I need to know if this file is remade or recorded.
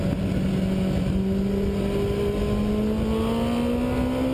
recorded